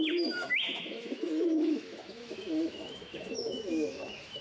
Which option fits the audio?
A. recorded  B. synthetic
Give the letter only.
B